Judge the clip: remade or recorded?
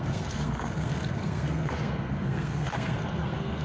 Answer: remade